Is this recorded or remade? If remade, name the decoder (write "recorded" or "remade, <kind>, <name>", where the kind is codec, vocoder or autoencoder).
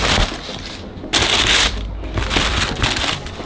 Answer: recorded